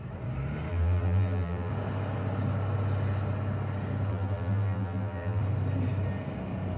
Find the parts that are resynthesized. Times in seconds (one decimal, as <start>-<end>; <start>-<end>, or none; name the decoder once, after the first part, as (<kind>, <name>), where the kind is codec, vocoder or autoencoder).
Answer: 0.7-1.7 (vocoder, BigVGAN v2); 4.1-5.4